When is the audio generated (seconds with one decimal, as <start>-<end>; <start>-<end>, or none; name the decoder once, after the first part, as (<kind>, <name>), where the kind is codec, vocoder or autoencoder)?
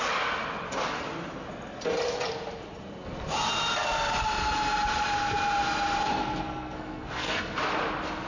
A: 6.2-7.6 (codec, SNAC)